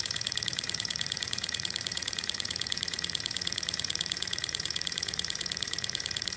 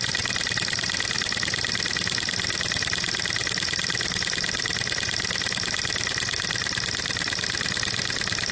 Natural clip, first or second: second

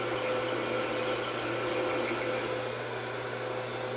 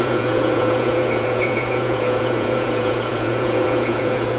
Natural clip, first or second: first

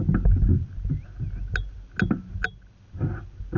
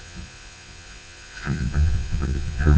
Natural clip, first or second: first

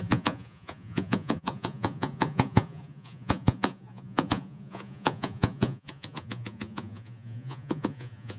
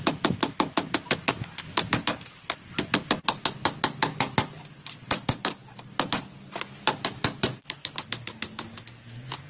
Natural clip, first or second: second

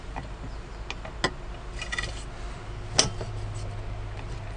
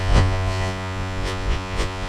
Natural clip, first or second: first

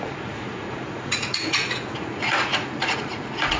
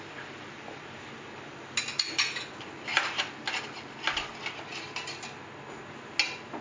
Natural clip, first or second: second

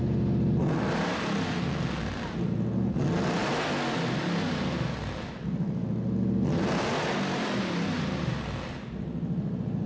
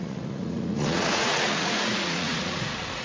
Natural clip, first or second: first